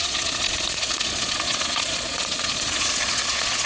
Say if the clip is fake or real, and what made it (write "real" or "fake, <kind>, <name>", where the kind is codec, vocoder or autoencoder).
fake, vocoder, Vocos